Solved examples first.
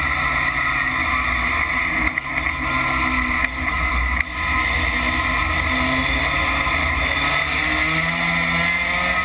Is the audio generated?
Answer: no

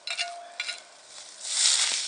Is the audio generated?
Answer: no